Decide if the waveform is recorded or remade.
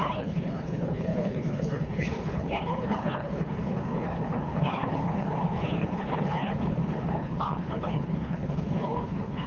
remade